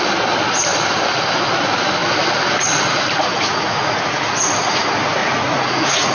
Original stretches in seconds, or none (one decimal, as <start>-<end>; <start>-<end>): 0.0-3.3; 4.2-5.2